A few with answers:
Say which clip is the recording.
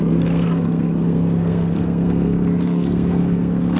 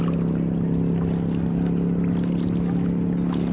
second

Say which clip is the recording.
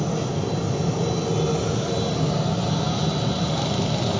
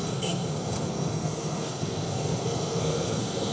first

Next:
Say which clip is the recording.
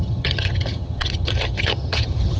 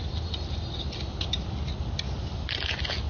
second